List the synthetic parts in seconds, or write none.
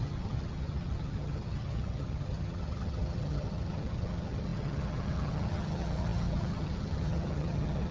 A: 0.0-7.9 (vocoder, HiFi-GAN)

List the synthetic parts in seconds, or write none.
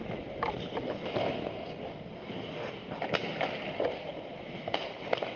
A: none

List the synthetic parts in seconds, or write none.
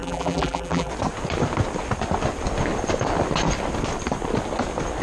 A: 0.0-0.9 (vocoder, BigVGAN v2)